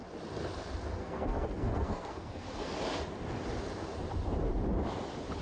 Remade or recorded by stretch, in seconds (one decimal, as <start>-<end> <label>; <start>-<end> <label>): 0.0-1.0 recorded; 1.0-2.8 remade; 2.8-5.4 recorded